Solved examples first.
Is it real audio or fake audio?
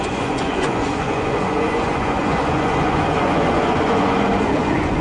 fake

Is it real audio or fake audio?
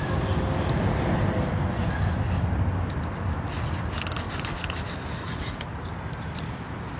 real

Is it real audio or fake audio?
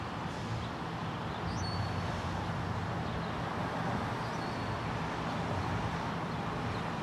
real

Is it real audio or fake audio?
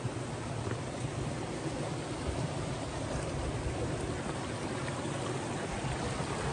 real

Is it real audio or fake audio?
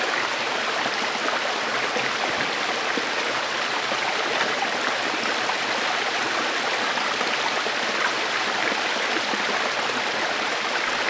real